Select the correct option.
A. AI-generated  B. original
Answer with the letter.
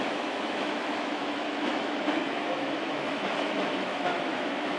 A